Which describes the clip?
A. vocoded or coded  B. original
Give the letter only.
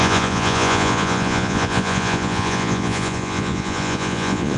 A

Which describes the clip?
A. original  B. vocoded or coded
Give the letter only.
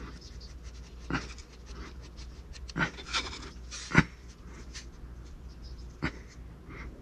A